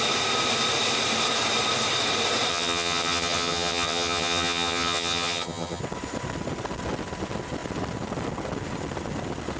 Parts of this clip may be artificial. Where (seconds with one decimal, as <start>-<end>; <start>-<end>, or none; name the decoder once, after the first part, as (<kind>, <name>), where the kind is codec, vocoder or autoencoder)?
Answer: 2.5-5.8 (vocoder, HiFi-GAN)